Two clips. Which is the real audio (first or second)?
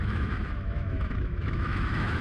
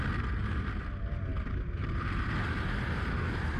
second